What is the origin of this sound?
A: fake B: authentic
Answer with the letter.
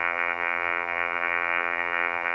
A